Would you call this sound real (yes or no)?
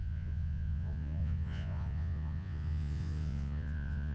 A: no